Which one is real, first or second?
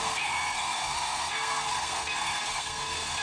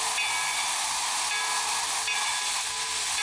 second